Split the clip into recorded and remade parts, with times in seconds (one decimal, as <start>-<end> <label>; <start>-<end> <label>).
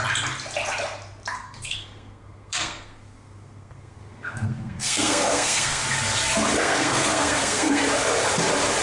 0.0-1.3 recorded; 1.3-5.8 remade; 5.8-6.6 recorded; 6.6-7.8 remade; 7.8-8.8 recorded